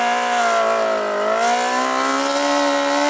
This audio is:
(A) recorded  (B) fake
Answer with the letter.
A